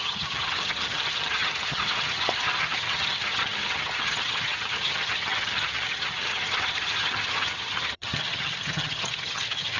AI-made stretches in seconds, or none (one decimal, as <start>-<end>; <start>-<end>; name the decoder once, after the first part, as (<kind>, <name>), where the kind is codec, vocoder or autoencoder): 0.0-9.8 (vocoder, HiFi-GAN)